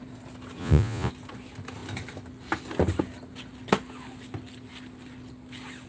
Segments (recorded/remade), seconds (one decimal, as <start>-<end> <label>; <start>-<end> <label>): 0.0-0.6 recorded; 0.6-1.1 remade; 1.1-5.9 recorded